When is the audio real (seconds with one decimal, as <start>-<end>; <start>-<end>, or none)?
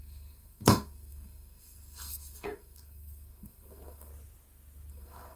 4.1-4.9